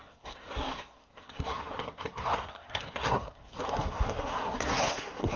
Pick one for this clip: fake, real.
fake